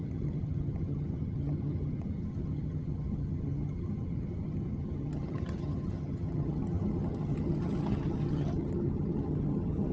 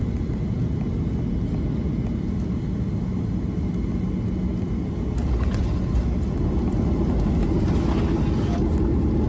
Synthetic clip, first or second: first